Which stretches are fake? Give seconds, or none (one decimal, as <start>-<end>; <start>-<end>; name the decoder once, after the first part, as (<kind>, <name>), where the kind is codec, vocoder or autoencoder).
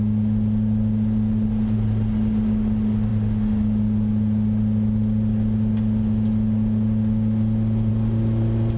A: none